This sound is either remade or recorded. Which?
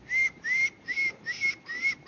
recorded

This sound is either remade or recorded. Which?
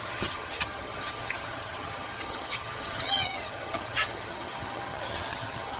remade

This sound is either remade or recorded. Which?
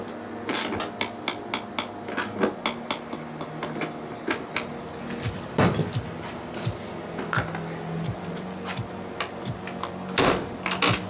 recorded